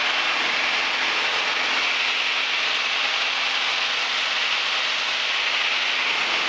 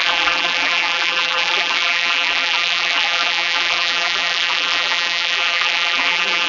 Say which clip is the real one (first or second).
first